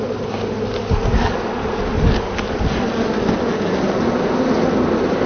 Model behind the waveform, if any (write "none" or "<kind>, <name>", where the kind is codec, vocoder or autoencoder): none